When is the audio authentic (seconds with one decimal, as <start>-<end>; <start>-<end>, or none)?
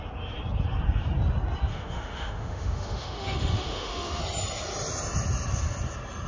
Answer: 0.0-1.7; 4.2-6.3